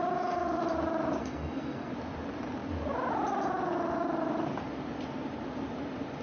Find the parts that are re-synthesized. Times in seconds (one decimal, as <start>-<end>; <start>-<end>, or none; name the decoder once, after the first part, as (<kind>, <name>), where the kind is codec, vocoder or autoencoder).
1.2-1.9 (codec, SNAC)